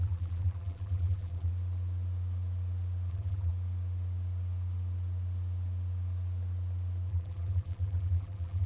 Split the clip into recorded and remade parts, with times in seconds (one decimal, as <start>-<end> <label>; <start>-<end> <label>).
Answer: 0.0-1.5 remade; 1.5-3.1 recorded; 3.1-3.5 remade; 3.5-7.1 recorded; 7.1-8.7 remade